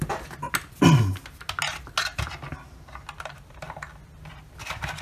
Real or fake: real